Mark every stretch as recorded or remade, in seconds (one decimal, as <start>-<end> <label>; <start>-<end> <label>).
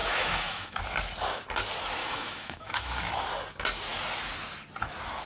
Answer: 0.0-0.8 remade; 0.8-2.0 recorded; 2.0-2.9 remade; 2.9-5.3 recorded